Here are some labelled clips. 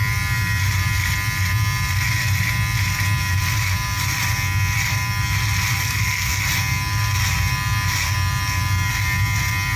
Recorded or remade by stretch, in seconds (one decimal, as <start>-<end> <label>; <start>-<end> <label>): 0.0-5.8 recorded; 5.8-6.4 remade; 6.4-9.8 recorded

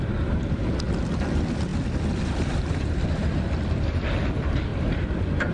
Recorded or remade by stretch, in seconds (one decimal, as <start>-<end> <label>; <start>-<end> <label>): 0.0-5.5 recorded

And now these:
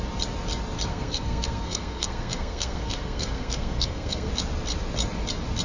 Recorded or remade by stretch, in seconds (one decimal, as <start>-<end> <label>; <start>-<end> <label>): 0.0-0.9 recorded; 0.9-4.3 remade; 4.3-5.6 recorded

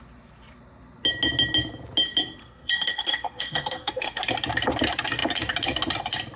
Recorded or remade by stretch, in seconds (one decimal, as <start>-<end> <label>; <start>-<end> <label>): 0.0-2.4 recorded; 2.4-4.2 remade; 4.2-6.4 recorded

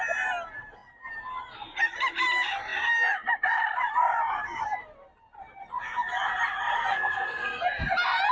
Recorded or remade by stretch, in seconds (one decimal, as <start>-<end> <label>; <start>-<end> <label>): 0.0-6.9 recorded; 6.9-7.6 remade; 7.6-8.3 recorded

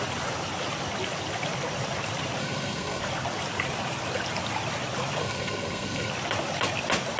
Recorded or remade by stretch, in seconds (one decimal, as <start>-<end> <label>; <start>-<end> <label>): 0.0-2.4 recorded; 2.4-3.0 remade; 3.0-5.2 recorded; 5.2-6.1 remade; 6.1-7.2 recorded